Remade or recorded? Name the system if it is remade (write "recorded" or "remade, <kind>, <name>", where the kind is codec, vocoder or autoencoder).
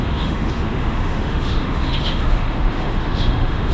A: remade, autoencoder, DAC-VAE